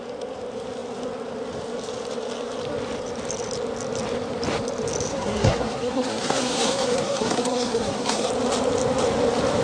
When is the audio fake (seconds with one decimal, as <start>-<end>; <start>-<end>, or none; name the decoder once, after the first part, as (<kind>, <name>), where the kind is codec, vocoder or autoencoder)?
5.1-8.3 (codec, SNAC)